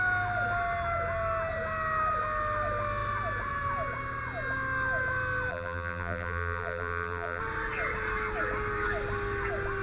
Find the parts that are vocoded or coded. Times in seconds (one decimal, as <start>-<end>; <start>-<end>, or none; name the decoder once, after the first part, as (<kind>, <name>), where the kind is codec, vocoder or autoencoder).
5.5-7.4 (vocoder, BigVGAN v2)